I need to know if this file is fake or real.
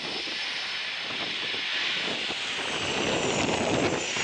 real